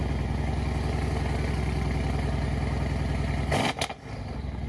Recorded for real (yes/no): yes